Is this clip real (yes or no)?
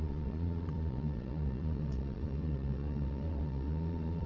no